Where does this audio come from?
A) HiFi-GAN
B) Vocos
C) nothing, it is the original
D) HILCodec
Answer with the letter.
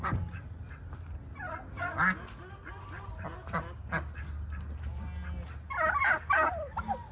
C